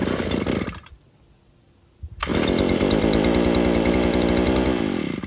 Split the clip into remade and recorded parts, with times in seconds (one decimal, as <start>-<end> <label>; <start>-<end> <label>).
0.0-0.9 remade; 0.9-5.3 recorded